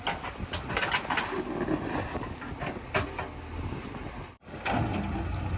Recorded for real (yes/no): yes